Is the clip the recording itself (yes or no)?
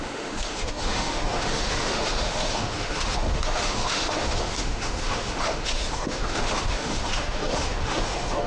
no